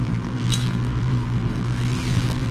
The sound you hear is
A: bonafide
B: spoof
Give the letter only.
B